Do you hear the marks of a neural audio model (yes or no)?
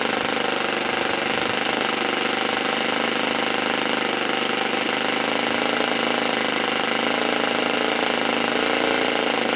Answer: no